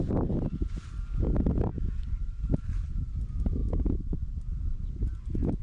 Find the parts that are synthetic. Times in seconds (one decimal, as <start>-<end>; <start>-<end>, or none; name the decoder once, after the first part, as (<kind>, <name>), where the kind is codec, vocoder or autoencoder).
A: none